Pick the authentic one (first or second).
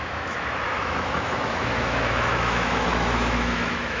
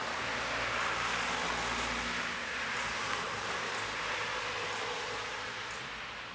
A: second